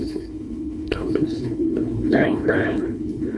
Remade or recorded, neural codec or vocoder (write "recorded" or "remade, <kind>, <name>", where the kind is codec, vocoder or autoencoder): remade, codec, HILCodec